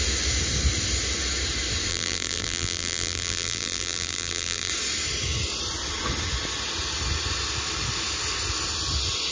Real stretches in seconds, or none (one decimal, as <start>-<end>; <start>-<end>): 0.0-1.9; 4.7-9.3